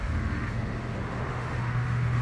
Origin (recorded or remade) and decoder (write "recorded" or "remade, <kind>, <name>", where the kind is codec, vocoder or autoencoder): remade, autoencoder, DAC-VAE